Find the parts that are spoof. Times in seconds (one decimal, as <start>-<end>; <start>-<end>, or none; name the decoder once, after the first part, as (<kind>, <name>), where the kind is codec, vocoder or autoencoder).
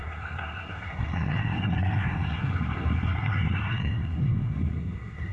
0.0-5.3 (codec, SNAC)